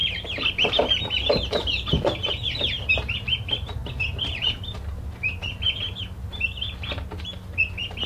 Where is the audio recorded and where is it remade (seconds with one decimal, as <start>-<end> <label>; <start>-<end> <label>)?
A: 0.0-3.9 remade; 3.9-8.1 recorded